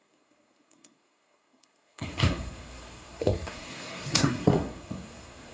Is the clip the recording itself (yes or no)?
no